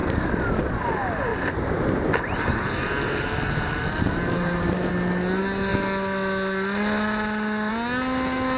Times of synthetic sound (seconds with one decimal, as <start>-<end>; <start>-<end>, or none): 1.3-4.9